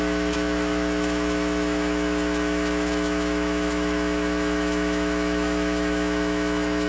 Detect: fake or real fake